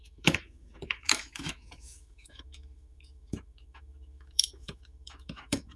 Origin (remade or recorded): remade